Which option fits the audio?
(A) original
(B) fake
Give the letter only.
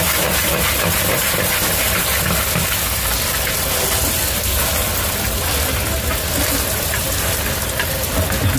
A